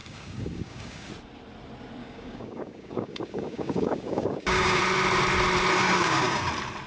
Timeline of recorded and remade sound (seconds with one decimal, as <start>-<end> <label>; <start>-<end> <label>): 0.0-1.1 remade; 1.1-2.0 recorded; 2.0-4.8 remade; 4.8-5.8 recorded; 5.8-6.5 remade; 6.5-6.9 recorded

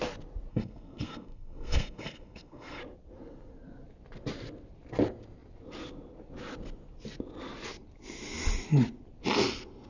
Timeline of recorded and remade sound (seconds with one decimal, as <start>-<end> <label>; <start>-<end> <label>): 0.0-0.5 recorded; 0.5-2.8 remade; 2.8-9.9 recorded

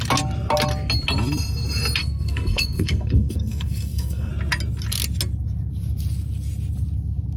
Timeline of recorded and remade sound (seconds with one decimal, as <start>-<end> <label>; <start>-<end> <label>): 0.0-2.0 recorded; 2.0-4.3 remade; 4.3-7.4 recorded

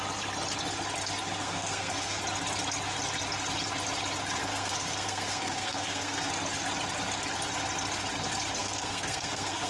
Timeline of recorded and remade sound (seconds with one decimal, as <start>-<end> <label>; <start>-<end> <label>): 0.0-1.4 recorded; 1.4-2.2 remade; 2.2-4.4 recorded; 4.4-6.3 remade; 6.3-8.6 recorded; 8.6-9.7 remade

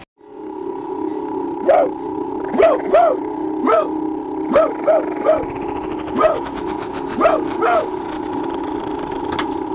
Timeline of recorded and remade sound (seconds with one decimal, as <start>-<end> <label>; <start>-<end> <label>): 0.0-9.7 recorded

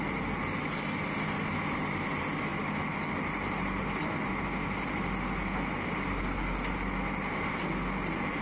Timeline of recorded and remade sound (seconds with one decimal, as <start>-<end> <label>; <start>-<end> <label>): 0.0-8.4 recorded

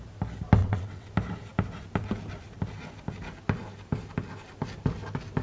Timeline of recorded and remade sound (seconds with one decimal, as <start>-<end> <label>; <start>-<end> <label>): 0.0-0.6 recorded; 0.6-1.1 remade; 1.1-5.4 recorded